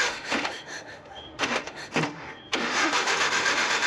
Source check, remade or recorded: remade